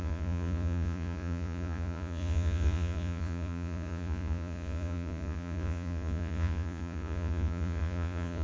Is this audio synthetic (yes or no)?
yes